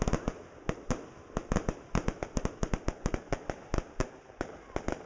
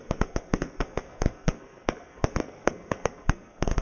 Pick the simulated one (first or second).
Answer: second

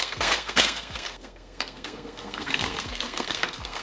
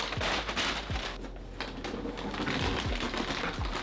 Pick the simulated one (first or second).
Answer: first